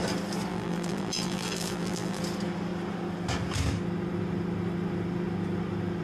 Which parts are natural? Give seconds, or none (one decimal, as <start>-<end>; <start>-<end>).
0.0-0.5; 2.2-6.0